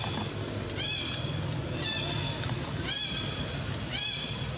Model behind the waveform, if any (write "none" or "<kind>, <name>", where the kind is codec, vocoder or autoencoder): none